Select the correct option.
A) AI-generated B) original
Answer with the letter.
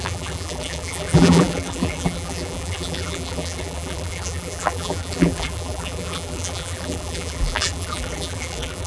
A